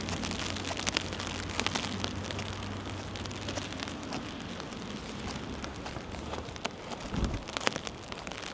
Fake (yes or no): no